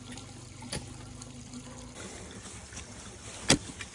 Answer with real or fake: real